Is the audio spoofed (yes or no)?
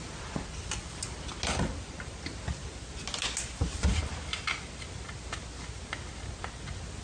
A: no